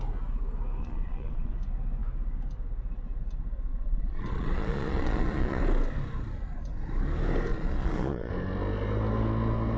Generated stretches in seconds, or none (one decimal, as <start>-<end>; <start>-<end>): 0.8-1.5; 3.7-5.6; 7.5-8.3